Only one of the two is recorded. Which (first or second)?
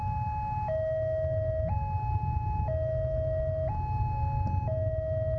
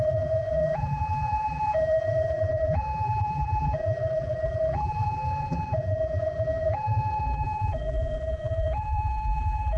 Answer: first